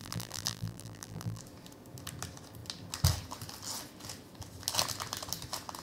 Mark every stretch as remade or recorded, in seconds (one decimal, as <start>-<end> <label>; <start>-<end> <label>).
0.0-1.4 remade; 1.4-5.8 recorded